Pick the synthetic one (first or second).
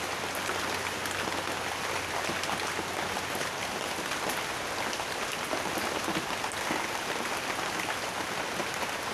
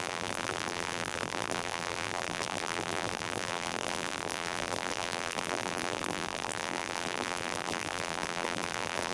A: second